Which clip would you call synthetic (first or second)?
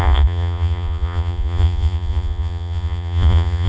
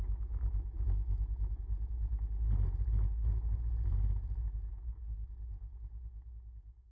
first